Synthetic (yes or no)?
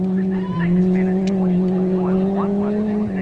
no